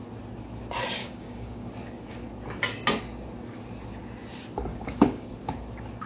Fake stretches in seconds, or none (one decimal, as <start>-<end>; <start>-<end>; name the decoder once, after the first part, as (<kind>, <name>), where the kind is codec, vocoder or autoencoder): 1.0-1.7 (codec, DAC); 4.7-5.3